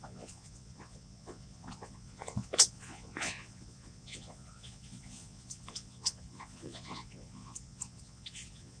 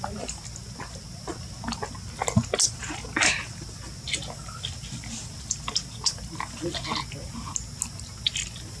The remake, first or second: first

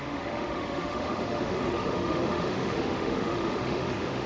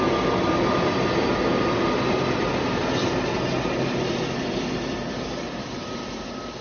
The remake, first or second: first